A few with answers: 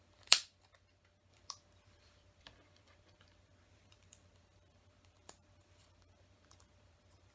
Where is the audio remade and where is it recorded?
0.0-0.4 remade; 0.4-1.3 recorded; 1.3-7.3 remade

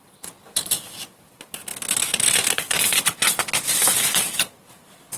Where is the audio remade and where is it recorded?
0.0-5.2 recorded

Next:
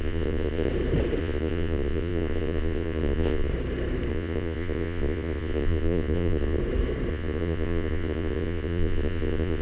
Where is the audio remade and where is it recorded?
0.0-0.7 remade; 0.7-1.2 recorded; 1.2-3.5 remade; 3.5-4.1 recorded; 4.1-6.6 remade; 6.6-7.1 recorded; 7.1-9.6 remade